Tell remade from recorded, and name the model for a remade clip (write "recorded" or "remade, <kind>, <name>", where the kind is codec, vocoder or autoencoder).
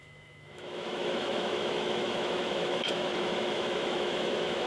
remade, autoencoder, DAC-VAE